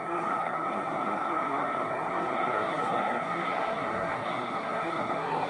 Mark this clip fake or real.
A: fake